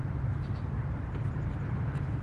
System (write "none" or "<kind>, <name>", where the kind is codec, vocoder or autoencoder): vocoder, BigVGAN v2